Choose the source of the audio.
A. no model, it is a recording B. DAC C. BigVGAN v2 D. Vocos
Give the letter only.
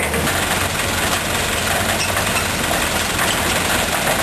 A